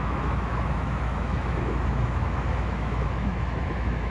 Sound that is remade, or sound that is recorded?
remade